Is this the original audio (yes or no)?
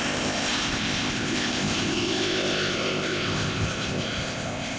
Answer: no